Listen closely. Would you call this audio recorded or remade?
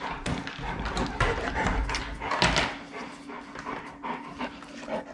recorded